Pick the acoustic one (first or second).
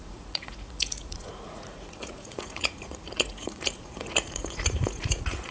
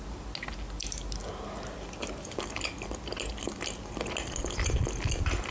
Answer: second